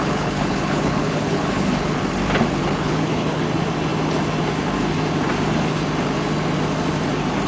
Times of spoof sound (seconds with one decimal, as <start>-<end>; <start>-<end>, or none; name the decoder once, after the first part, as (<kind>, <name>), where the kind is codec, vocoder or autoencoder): 0.0-2.0 (codec, HILCodec); 2.6-3.4